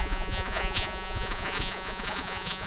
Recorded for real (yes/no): no